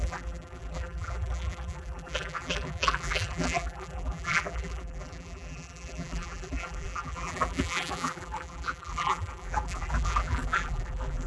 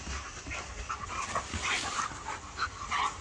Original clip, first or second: second